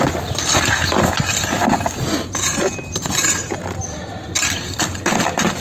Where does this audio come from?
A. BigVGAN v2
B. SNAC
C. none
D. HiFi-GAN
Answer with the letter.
C